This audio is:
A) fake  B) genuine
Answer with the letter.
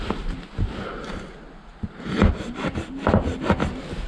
B